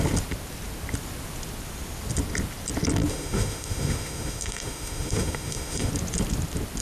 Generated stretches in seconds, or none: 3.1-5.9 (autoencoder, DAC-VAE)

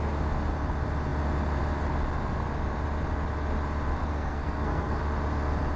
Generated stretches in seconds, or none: 4.0-5.0 (codec, SNAC)

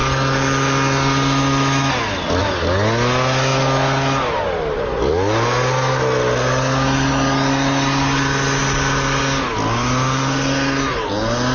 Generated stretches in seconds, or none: none

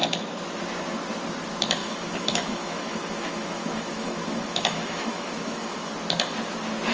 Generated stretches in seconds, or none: 1.8-5.9 (autoencoder, DAC-VAE)

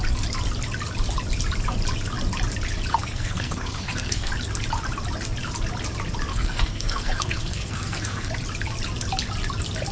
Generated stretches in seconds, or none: 2.9-4.3 (codec, SNAC); 6.3-8.3

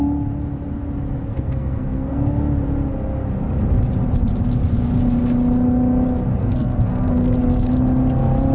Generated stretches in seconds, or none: 1.3-2.3 (codec, SNAC); 6.4-7.7

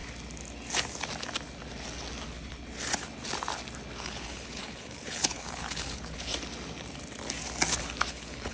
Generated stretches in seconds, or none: 4.0-6.3 (codec, HILCodec); 8.1-8.5

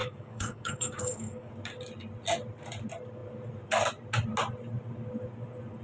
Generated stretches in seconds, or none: 0.0-1.5 (codec, DAC)